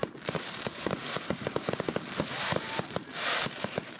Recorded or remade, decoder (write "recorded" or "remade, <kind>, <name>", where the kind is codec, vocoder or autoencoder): remade, vocoder, BigVGAN v2